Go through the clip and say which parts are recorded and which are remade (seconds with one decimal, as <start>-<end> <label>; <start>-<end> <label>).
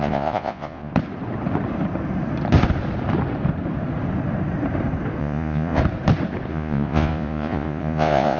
0.0-0.9 remade; 0.9-5.2 recorded; 5.2-5.8 remade; 5.8-6.5 recorded; 6.5-8.4 remade